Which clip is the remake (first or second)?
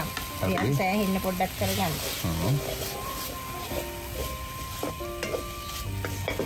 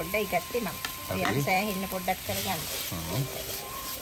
second